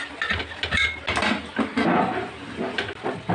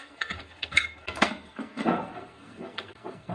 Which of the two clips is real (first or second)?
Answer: first